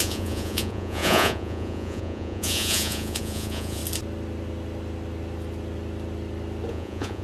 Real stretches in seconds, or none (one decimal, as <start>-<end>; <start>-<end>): 3.8-6.7